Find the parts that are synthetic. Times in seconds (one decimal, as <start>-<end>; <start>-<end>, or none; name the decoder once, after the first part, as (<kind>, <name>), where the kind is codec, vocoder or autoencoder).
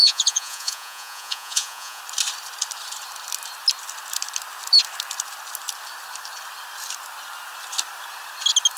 0.0-2.0 (vocoder, Vocos)